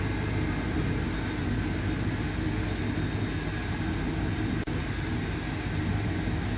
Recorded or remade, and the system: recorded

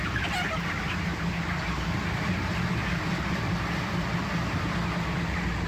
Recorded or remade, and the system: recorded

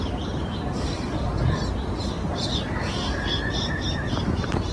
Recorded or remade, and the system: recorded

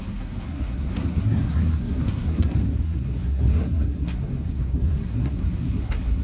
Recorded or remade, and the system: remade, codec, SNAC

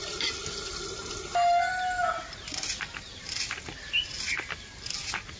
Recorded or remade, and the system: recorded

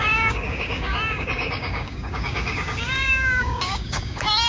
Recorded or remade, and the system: remade, codec, DAC